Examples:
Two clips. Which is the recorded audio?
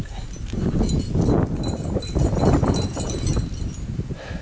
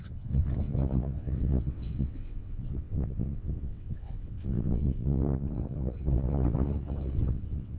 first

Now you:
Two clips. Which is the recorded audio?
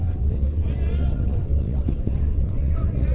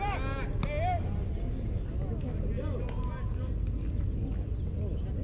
second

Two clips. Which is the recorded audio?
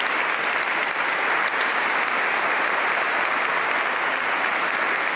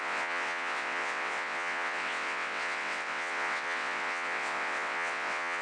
first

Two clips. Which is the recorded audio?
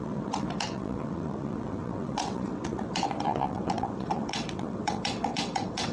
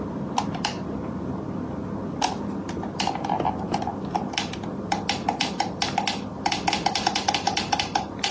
second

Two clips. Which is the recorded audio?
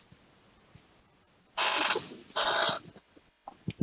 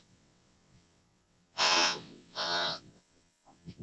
first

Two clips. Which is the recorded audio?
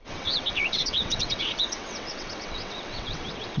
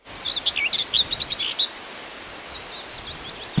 second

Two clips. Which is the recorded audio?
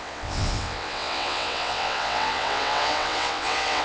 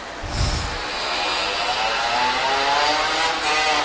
second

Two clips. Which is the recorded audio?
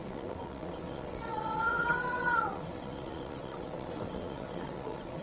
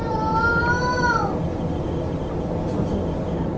second